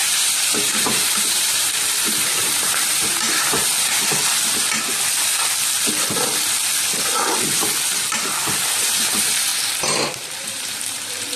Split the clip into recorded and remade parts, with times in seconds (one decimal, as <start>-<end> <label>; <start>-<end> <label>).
0.0-3.7 remade; 3.7-8.8 recorded; 8.8-9.5 remade; 9.5-10.4 recorded; 10.4-11.4 remade